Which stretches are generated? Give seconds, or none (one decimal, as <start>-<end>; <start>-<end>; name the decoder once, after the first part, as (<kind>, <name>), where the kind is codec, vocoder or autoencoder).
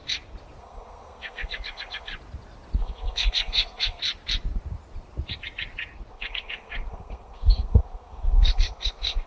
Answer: 0.6-2.1 (codec, SNAC); 2.8-4.0; 6.1-9.3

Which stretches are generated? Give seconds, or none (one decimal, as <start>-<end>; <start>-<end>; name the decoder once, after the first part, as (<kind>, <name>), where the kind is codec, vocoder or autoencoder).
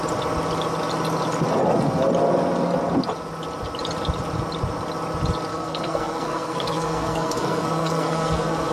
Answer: 5.5-8.7 (codec, SNAC)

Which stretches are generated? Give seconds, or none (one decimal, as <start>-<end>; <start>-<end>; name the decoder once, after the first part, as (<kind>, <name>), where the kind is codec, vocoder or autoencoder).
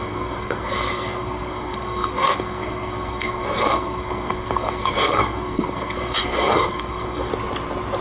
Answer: 0.0-7.3 (codec, SNAC)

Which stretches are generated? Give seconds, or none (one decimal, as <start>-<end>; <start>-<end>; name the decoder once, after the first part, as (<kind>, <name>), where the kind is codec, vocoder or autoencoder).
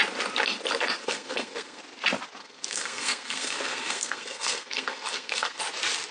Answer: 1.0-1.8 (codec, SNAC); 2.4-5.6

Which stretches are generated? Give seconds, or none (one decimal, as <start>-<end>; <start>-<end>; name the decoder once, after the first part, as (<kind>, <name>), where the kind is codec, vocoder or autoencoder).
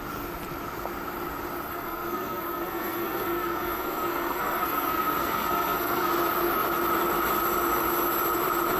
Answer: 1.7-6.1 (codec, SNAC)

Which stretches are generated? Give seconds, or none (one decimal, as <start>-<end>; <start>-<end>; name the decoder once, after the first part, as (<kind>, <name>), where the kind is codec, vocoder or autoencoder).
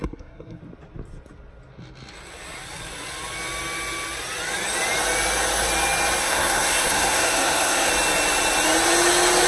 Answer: 0.0-0.6 (codec, SNAC); 6.2-7.9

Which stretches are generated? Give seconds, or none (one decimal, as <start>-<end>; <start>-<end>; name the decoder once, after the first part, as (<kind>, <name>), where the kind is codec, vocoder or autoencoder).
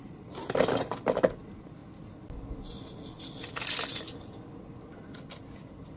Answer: none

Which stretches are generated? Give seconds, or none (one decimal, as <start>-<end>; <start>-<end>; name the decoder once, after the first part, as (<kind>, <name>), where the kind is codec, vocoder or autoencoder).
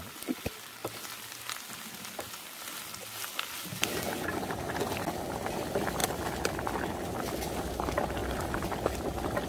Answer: none